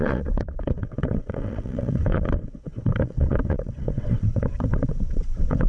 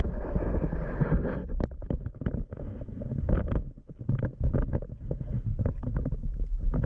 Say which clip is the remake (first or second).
first